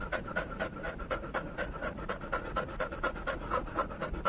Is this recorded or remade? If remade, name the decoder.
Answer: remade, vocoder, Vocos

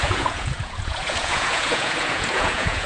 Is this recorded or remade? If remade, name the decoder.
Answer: remade, vocoder, Vocos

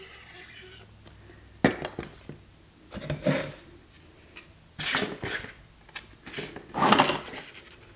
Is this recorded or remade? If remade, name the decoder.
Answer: recorded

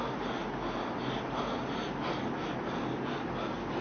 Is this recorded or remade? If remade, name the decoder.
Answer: recorded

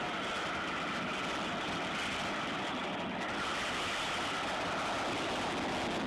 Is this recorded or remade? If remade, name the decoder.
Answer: recorded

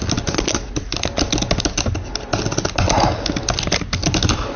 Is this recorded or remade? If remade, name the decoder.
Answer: recorded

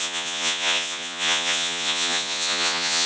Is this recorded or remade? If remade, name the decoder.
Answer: remade, vocoder, Vocos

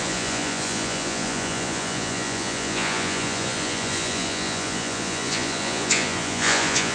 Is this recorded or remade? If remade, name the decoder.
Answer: remade, vocoder, Vocos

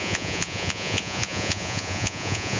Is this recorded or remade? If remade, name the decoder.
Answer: remade, vocoder, Vocos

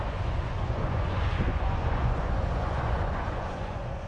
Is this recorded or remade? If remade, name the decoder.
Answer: remade, vocoder, Vocos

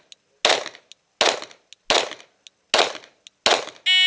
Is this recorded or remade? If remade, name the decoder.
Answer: recorded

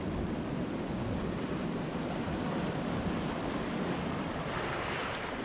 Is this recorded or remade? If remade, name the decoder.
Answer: recorded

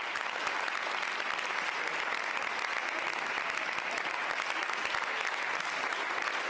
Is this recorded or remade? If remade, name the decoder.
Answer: recorded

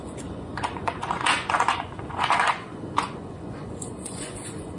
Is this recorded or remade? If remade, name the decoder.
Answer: remade, vocoder, Vocos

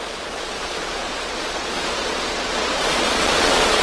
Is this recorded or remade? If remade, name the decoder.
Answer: remade, vocoder, Vocos